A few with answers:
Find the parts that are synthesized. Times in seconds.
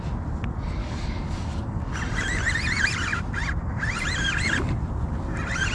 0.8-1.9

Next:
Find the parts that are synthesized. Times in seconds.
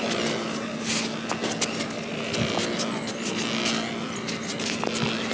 none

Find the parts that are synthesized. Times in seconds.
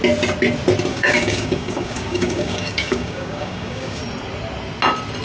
0.9-4.0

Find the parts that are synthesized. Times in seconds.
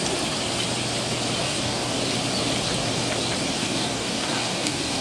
1.4-2.0; 3.6-5.0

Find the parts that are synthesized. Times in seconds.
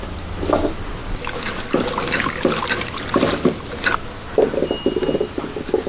none